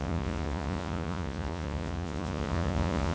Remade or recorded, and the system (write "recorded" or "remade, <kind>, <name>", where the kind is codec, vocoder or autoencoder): remade, vocoder, Vocos